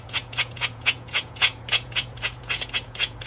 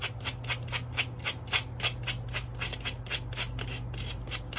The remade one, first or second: first